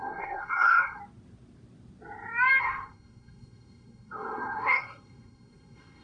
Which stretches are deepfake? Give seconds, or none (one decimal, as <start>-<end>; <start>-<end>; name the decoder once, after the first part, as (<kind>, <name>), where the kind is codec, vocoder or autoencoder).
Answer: 0.0-1.0 (codec, SNAC); 2.6-6.0